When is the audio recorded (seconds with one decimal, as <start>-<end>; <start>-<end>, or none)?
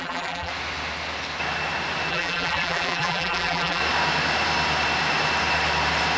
0.5-2.1; 3.8-6.2